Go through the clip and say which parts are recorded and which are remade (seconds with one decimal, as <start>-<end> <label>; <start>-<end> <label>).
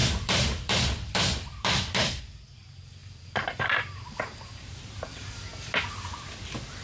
0.0-2.2 remade; 2.2-3.0 recorded; 3.0-5.0 remade; 5.0-6.8 recorded